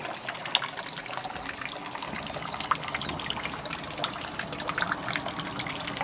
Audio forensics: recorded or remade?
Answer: recorded